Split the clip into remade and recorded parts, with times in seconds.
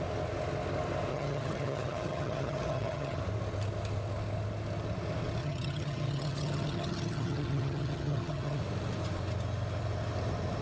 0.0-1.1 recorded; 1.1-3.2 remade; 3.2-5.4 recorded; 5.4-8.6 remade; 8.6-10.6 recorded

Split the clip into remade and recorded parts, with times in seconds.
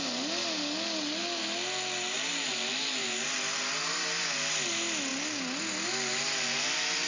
0.0-7.1 recorded